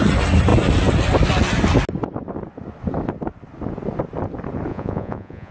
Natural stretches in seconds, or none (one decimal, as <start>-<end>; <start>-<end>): 0.0-4.7